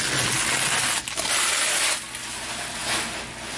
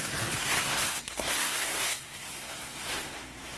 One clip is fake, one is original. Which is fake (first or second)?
second